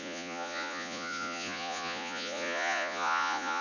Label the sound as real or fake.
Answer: fake